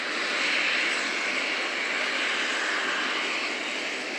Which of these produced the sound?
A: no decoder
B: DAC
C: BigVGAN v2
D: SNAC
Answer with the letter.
A